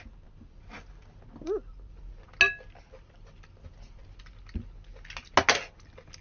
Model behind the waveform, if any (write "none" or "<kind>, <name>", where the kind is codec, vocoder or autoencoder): none